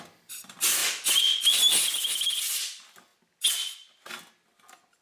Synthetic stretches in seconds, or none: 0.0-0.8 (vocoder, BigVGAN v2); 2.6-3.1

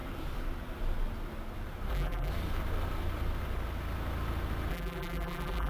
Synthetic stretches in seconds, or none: 1.9-2.3 (vocoder, BigVGAN v2); 4.7-5.7